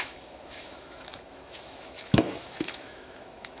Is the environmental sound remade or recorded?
remade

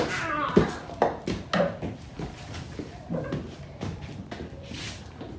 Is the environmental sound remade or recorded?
recorded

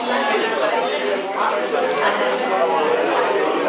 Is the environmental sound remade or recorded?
recorded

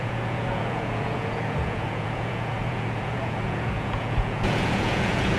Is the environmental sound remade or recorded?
remade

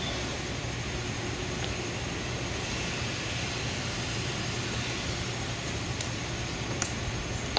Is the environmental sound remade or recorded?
recorded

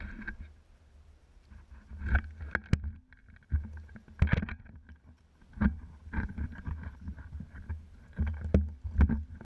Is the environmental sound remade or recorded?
recorded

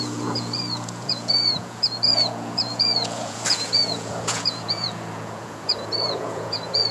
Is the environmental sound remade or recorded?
remade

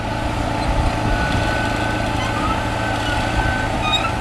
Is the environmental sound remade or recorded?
recorded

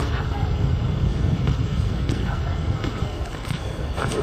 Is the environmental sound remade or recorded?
remade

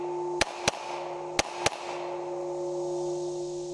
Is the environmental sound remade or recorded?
recorded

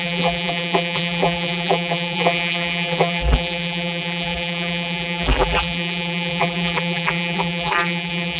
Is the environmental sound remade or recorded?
remade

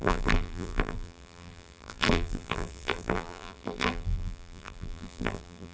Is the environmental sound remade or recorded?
remade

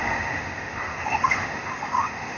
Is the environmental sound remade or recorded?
remade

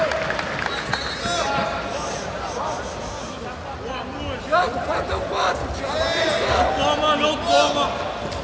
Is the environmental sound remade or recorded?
recorded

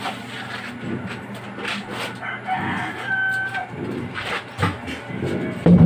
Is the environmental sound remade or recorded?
recorded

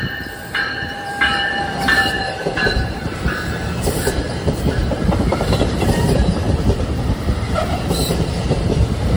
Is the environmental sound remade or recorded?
remade